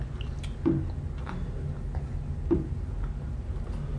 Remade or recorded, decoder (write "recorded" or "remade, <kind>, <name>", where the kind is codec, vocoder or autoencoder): recorded